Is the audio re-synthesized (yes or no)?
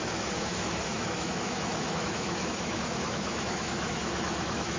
yes